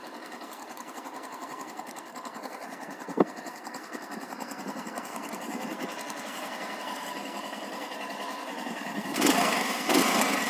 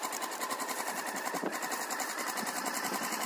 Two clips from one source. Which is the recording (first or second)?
second